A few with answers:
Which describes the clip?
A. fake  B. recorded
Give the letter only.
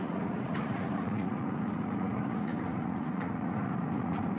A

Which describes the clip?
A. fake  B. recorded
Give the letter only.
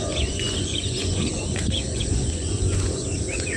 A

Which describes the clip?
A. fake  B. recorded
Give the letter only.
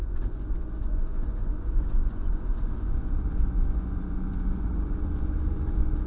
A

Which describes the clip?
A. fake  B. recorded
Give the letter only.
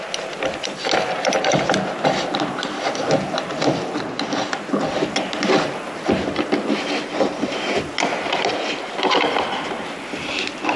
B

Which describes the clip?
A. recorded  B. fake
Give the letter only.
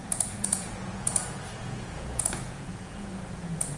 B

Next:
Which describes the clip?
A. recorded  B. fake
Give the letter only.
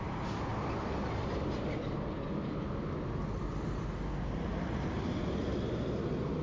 A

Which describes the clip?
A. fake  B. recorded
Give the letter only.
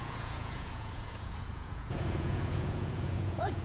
A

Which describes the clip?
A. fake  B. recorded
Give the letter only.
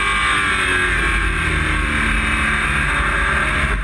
B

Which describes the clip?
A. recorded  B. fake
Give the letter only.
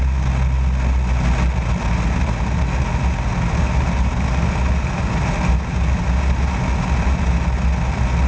A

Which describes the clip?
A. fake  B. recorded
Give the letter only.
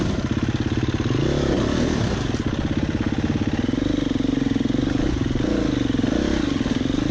B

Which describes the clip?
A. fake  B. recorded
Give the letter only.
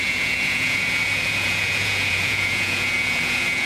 A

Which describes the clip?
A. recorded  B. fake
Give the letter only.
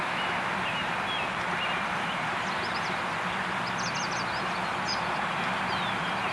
A